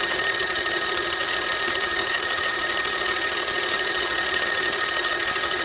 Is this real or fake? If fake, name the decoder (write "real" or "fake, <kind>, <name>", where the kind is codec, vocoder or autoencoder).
fake, vocoder, HiFi-GAN